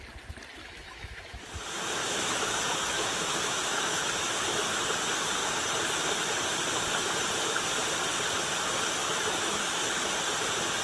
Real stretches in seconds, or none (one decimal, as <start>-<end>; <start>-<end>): 0.0-0.6; 1.4-2.0; 4.3-9.0; 9.9-10.8